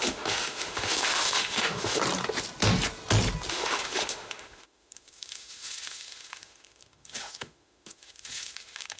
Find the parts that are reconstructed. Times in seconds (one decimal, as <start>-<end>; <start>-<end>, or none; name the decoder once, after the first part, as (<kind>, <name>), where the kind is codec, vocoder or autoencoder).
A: 0.0-2.0 (autoencoder, DAC-VAE); 3.5-9.0